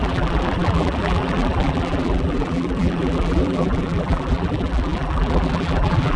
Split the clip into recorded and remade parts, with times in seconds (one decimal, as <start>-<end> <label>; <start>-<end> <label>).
0.0-6.2 remade